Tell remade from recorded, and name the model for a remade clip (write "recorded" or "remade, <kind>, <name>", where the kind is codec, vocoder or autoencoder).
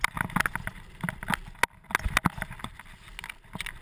recorded